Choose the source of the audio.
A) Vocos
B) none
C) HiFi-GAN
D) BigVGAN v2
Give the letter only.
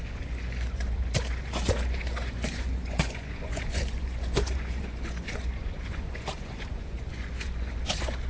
A